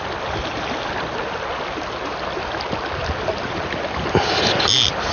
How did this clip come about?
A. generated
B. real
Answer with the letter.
B